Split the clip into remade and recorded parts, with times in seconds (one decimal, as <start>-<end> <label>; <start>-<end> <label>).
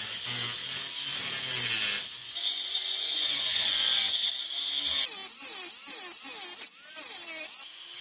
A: 0.0-2.2 recorded; 2.2-4.3 remade; 4.3-8.0 recorded